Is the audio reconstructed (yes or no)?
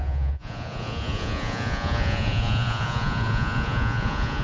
yes